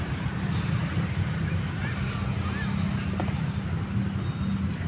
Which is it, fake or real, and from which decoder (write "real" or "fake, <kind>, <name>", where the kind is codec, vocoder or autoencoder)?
real